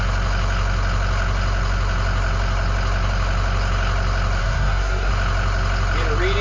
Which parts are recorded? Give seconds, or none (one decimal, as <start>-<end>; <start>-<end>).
0.0-4.4; 5.1-6.4